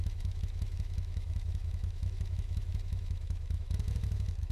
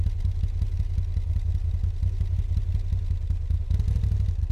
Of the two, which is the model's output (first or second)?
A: first